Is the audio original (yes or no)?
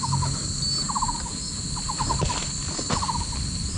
yes